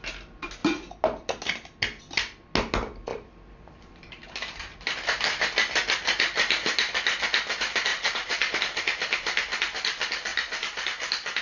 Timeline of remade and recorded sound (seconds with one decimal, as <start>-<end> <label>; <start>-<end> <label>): 0.0-3.1 recorded; 3.1-5.4 remade; 5.4-7.9 recorded; 7.9-8.6 remade; 8.6-11.4 recorded